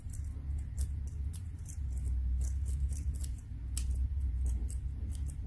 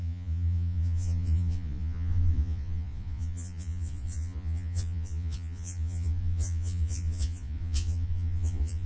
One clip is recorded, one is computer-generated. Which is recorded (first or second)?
first